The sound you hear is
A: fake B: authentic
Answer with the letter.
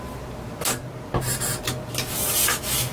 B